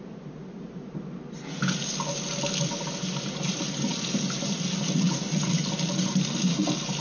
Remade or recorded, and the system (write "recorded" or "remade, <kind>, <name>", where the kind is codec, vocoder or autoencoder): recorded